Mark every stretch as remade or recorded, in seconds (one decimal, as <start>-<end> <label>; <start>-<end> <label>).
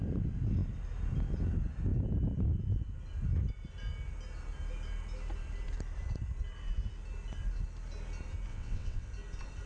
0.0-8.5 recorded; 8.5-9.1 remade; 9.1-9.7 recorded